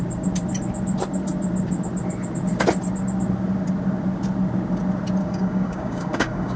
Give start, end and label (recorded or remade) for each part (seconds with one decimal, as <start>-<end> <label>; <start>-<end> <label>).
0.0-5.2 recorded; 5.2-6.6 remade